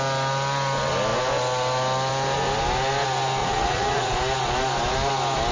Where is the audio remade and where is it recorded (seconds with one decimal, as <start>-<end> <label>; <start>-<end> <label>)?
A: 0.0-3.4 recorded; 3.4-4.1 remade; 4.1-5.5 recorded